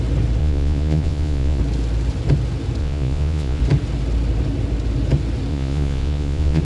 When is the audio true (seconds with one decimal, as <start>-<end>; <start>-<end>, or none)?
0.0-0.4; 1.6-2.8; 3.6-5.5

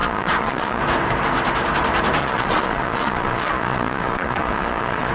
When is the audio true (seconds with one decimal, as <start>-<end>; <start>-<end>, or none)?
0.8-2.2

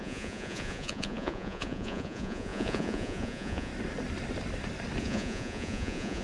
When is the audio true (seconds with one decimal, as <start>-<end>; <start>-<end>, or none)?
3.7-5.0

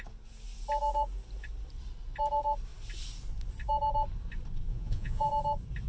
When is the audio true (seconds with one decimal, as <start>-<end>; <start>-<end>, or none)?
0.0-4.7; 5.3-5.9